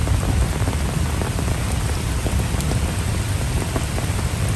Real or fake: fake